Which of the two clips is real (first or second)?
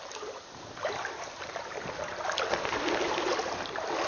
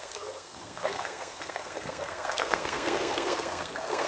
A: first